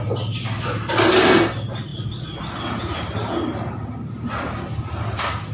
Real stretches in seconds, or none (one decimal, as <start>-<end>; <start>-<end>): 0.0-5.5